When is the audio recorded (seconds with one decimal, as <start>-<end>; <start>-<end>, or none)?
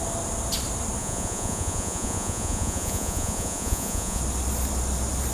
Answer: 0.0-1.0; 4.2-5.3